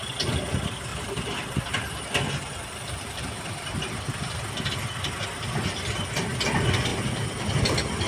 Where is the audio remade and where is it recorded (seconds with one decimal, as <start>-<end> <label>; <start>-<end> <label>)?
0.0-0.9 recorded; 0.9-5.2 remade; 5.2-8.1 recorded